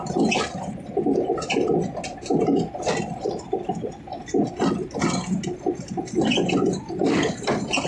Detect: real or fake real